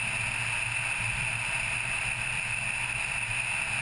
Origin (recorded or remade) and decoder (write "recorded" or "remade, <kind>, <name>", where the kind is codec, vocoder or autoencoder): recorded